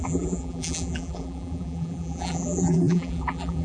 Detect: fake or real fake